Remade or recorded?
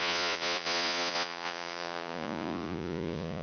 remade